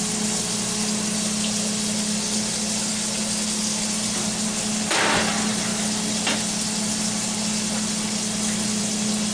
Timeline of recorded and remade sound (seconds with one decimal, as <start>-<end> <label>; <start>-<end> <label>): 0.0-9.3 recorded